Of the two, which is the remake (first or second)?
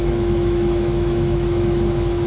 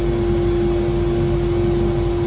first